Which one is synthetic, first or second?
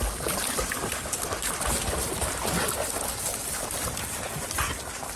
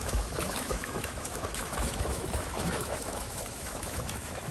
second